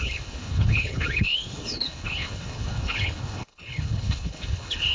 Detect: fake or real fake